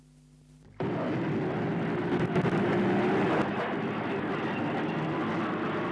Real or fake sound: real